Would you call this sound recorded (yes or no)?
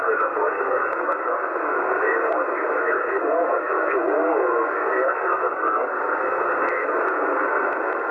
no